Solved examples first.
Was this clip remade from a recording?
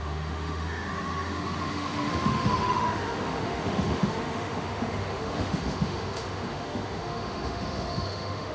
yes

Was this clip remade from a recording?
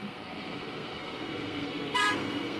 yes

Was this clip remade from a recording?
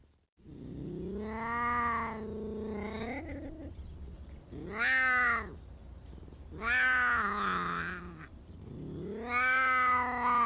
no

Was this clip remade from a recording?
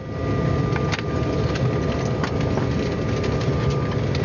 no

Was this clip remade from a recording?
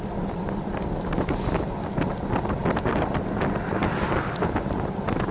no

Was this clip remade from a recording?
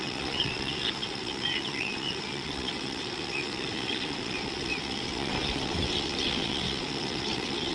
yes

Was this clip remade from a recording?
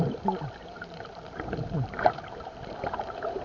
yes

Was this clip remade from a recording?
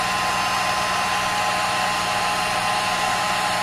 no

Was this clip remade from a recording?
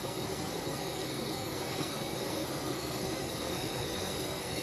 yes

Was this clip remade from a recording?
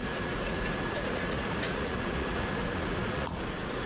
yes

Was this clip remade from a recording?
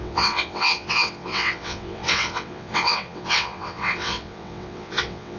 yes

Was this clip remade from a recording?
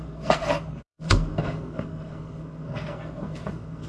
yes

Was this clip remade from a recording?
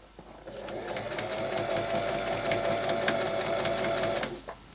no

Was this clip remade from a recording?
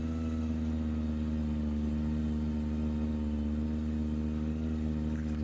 no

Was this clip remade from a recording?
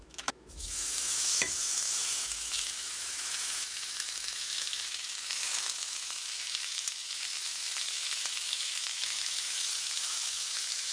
yes